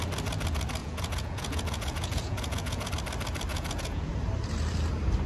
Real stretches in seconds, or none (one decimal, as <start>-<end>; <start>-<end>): 0.0-0.8; 2.9-3.5; 4.1-5.3